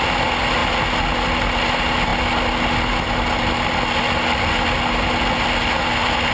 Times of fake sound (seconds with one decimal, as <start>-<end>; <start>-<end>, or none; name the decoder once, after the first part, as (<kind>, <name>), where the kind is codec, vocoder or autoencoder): none